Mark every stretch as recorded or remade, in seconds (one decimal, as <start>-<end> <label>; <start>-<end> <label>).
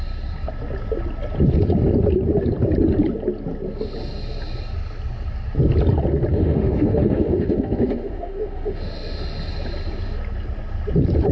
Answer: 0.0-6.3 recorded; 6.3-9.2 remade; 9.2-11.3 recorded